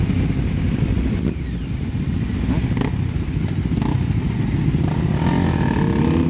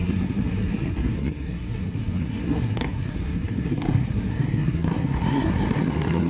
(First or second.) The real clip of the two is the first